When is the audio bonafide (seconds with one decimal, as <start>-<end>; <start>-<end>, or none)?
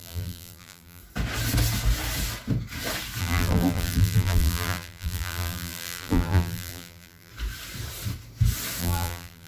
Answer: 1.0-3.2; 7.3-8.8